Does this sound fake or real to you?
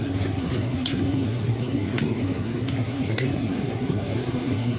fake